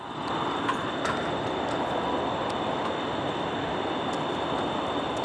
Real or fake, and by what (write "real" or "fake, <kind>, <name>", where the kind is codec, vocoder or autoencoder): real